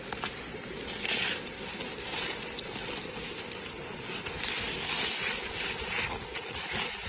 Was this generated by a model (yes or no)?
no